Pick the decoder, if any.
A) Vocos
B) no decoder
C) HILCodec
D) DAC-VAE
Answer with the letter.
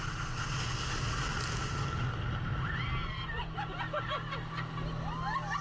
B